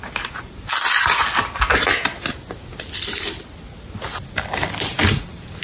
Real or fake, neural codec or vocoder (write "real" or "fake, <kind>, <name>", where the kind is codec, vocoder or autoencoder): real